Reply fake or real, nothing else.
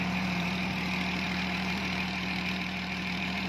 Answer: fake